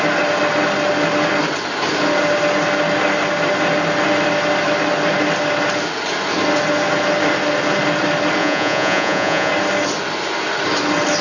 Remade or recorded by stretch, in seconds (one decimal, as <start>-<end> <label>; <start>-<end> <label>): 0.0-8.4 recorded; 8.4-9.5 remade; 9.5-11.2 recorded

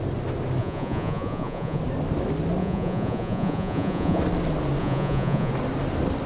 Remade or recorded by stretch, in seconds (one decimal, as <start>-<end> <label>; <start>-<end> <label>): 0.0-0.6 recorded; 0.6-1.8 remade; 1.8-2.6 recorded; 2.6-4.2 remade; 4.2-4.8 recorded; 4.8-5.5 remade; 5.5-6.3 recorded

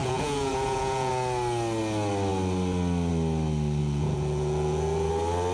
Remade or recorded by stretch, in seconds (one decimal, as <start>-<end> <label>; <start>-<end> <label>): 0.0-1.1 remade; 1.1-3.8 recorded; 3.8-5.1 remade; 5.1-5.5 recorded

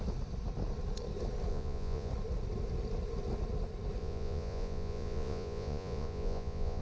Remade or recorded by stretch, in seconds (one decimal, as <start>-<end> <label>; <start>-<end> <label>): 0.0-1.5 recorded; 1.5-2.1 remade; 2.1-4.0 recorded; 4.0-6.8 remade

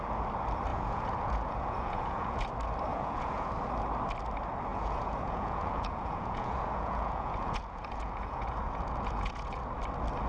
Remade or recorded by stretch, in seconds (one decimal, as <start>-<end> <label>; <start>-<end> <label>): 0.0-0.7 recorded; 0.7-2.5 remade; 2.5-2.9 recorded; 2.9-3.5 remade; 3.5-4.7 recorded; 4.7-9.6 remade; 9.6-10.3 recorded

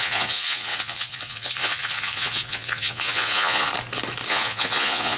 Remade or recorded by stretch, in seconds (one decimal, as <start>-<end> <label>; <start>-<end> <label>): 0.0-3.7 remade; 3.7-4.3 recorded; 4.3-5.2 remade

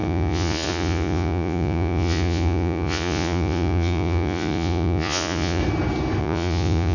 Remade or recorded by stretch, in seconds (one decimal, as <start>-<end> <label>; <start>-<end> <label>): 0.0-5.6 remade; 5.6-6.2 recorded; 6.2-6.9 remade

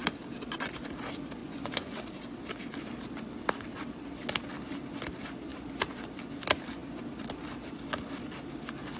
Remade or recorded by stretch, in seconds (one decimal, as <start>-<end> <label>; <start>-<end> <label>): 0.0-1.4 recorded; 1.4-2.0 remade; 2.0-9.0 recorded